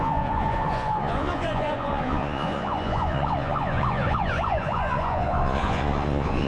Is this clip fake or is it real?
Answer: fake